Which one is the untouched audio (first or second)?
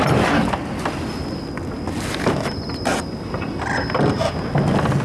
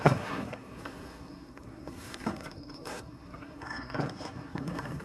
first